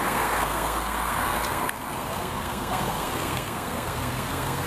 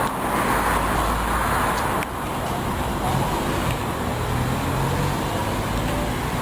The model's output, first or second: first